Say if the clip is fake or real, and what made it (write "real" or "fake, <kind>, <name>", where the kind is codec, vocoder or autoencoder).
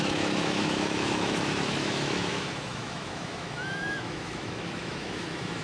fake, autoencoder, DAC-VAE